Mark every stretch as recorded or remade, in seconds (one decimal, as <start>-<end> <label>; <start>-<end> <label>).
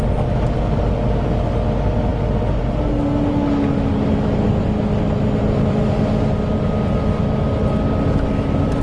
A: 0.0-8.8 recorded